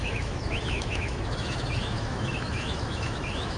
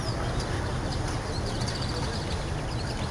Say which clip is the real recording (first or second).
second